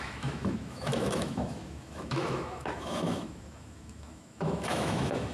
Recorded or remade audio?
remade